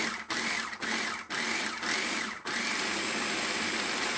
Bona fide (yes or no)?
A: yes